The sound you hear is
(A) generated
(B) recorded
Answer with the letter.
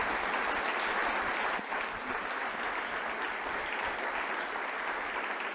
B